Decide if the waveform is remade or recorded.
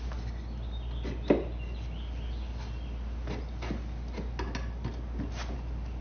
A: recorded